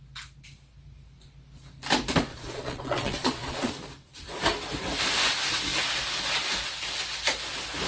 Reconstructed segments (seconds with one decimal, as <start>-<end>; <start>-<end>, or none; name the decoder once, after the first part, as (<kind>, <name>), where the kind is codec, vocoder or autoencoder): 2.3-3.7 (vocoder, Vocos)